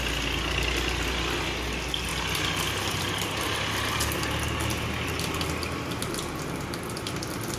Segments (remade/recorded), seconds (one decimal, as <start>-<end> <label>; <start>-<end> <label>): 0.0-7.6 recorded